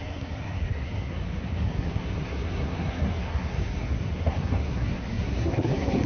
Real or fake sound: fake